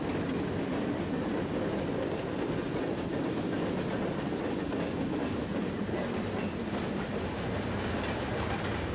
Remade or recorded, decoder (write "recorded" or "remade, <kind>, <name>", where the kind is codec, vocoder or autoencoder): recorded